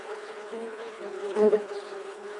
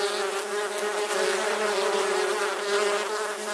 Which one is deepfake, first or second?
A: first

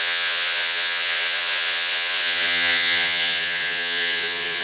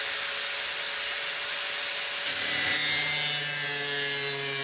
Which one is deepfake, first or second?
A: first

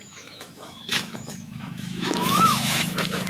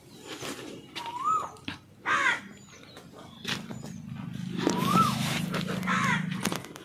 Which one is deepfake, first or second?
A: first